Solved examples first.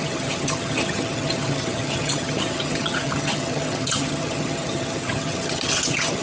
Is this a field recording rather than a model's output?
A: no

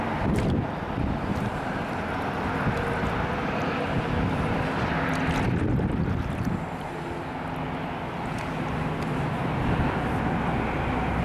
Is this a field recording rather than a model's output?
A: yes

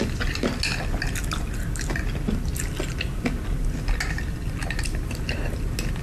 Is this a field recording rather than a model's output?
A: yes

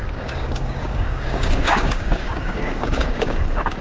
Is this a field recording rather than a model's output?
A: no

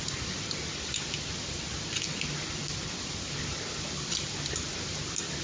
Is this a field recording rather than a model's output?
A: yes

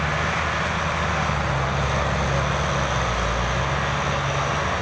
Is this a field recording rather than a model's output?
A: yes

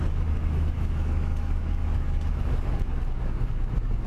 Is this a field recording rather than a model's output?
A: no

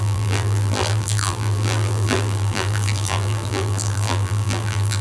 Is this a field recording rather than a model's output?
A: no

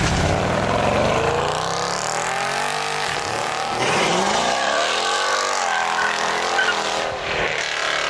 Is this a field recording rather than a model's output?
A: no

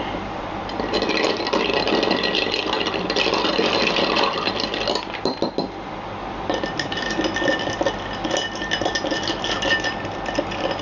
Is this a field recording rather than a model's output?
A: yes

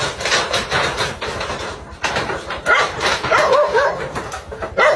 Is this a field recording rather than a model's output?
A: yes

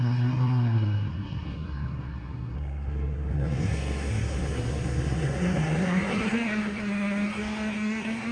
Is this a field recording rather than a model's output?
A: no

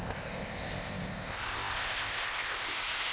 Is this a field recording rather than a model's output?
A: no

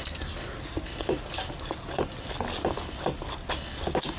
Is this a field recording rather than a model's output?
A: yes